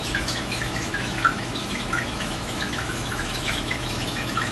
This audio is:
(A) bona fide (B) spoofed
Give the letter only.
B